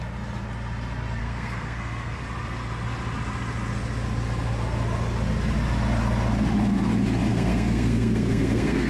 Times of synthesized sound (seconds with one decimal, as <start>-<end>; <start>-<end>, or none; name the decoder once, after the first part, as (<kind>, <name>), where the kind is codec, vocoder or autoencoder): 1.2-2.2 (codec, SNAC); 7.3-8.9